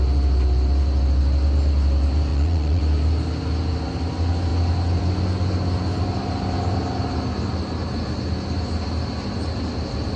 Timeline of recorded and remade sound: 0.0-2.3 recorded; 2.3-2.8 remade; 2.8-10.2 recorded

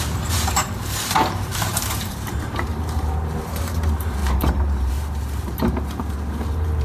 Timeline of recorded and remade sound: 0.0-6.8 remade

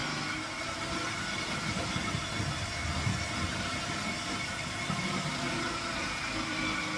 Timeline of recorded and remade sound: 0.0-0.9 recorded; 0.9-7.0 remade

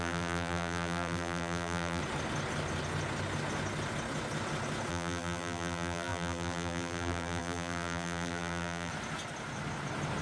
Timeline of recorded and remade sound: 0.0-2.0 remade; 2.0-4.9 recorded; 4.9-8.9 remade; 8.9-10.2 recorded

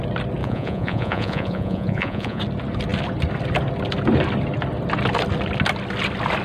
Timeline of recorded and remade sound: 0.0-0.4 recorded; 0.4-2.4 remade; 2.4-6.4 recorded

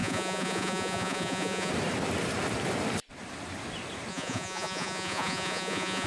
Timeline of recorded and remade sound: 0.0-1.7 remade; 1.7-4.1 recorded; 4.1-6.1 remade